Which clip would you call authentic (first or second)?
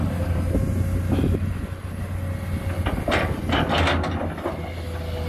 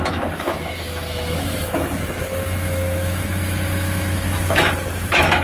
first